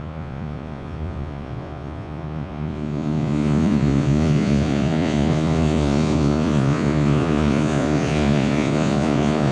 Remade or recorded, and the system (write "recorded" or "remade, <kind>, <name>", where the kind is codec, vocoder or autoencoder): remade, vocoder, Vocos